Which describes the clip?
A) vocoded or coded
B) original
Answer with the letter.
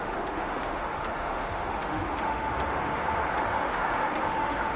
A